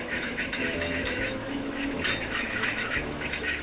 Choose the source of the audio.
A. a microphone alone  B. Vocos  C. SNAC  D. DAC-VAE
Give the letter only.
D